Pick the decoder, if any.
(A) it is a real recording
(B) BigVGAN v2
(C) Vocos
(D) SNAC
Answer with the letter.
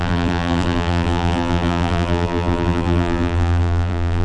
B